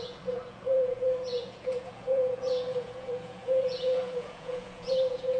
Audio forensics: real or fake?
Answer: fake